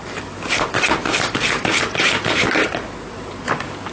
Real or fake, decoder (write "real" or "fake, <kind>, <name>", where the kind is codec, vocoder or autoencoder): fake, vocoder, BigVGAN v2